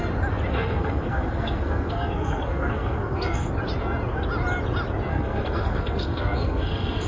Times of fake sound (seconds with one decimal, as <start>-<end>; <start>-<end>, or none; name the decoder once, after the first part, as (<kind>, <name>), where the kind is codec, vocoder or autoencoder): 0.5-3.5 (codec, SNAC); 5.1-7.1